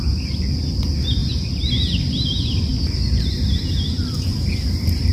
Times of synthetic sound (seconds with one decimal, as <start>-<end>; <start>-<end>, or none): 0.0-1.2; 1.7-2.7; 3.5-5.1